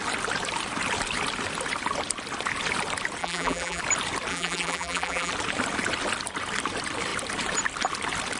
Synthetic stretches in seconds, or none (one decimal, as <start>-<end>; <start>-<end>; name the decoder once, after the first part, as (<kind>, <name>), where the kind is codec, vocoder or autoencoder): 3.2-3.8 (vocoder, BigVGAN v2); 4.3-5.3